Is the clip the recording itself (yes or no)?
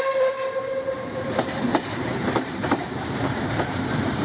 no